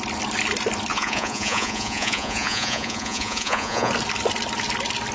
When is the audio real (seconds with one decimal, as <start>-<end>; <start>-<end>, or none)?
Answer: 0.0-0.9; 3.9-5.1